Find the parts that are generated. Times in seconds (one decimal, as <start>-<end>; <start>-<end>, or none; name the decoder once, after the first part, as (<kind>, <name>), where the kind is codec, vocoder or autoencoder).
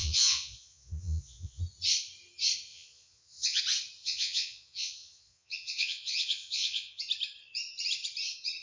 0.0-1.6 (vocoder, Vocos); 2.7-3.6; 4.0-7.0